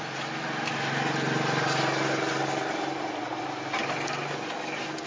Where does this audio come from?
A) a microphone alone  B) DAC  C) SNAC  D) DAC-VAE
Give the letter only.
A